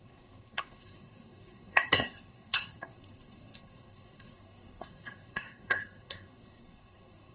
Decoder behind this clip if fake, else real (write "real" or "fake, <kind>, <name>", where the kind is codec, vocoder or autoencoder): fake, codec, SNAC